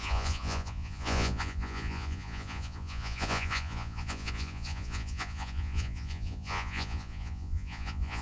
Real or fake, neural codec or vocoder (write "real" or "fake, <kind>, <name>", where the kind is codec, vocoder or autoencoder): fake, vocoder, Vocos